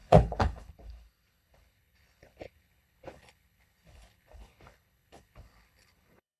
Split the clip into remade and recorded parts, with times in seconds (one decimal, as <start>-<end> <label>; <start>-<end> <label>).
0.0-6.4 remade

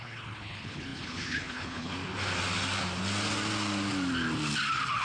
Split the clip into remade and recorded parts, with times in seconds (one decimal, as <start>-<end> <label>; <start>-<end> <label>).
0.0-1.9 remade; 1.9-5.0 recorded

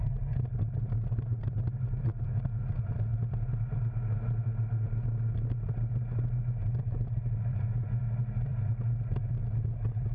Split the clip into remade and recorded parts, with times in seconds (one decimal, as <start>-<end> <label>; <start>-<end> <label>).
0.0-10.1 recorded

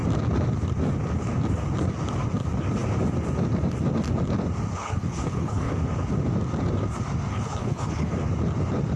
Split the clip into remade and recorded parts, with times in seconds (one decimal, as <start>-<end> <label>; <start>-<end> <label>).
0.0-4.7 recorded; 4.7-5.7 remade; 5.7-7.3 recorded; 7.3-8.1 remade; 8.1-9.0 recorded

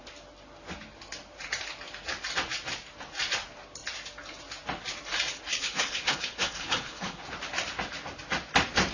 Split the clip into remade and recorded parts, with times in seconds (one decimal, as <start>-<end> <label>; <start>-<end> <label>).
0.0-5.5 recorded; 5.5-7.2 remade; 7.2-8.9 recorded